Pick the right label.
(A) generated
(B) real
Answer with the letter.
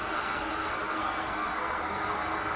A